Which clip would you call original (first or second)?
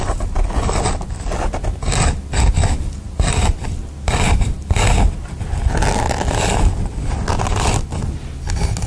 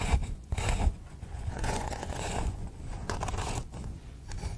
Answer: first